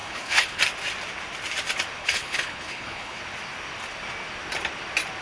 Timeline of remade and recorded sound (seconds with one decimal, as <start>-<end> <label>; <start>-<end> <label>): 0.0-0.6 remade; 0.6-2.0 recorded; 2.0-3.2 remade; 3.2-5.2 recorded